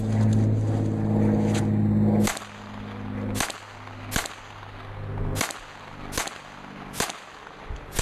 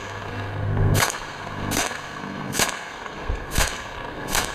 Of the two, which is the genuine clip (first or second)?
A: first